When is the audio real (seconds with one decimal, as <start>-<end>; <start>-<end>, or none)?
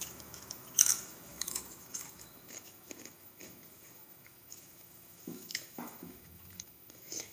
none